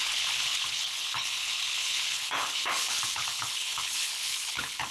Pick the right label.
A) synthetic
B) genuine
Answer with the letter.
A